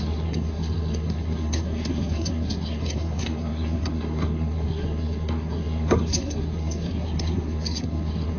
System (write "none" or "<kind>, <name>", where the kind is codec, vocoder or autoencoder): codec, SNAC